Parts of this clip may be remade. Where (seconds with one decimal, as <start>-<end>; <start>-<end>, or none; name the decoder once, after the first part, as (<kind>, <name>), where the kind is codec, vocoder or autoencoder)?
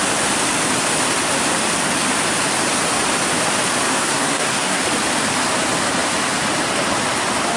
3.9-4.8 (codec, SNAC)